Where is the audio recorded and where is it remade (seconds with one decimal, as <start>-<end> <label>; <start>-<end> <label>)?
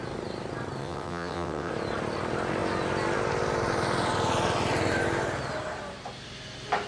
0.0-0.8 recorded; 0.8-1.7 remade; 1.7-6.9 recorded